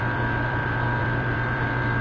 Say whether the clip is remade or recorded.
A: remade